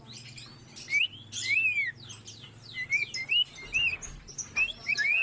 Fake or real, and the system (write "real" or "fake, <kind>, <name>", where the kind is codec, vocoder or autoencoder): real